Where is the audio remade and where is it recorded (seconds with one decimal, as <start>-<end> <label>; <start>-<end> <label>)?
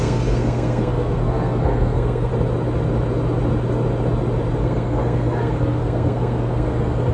0.0-2.3 remade; 2.3-4.6 recorded; 4.6-7.1 remade